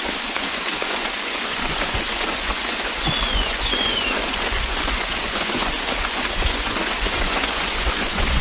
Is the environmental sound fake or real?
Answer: fake